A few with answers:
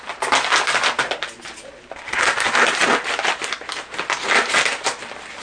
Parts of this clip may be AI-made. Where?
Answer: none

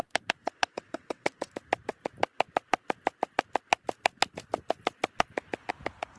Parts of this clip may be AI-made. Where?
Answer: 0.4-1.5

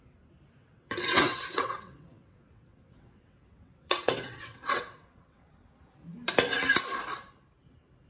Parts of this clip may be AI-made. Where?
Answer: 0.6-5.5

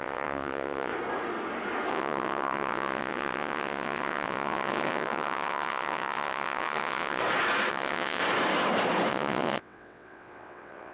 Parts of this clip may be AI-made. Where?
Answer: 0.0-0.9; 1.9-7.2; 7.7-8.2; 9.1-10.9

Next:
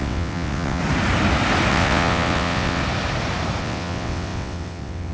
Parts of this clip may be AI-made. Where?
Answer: 0.0-0.8; 1.7-2.8; 3.6-5.1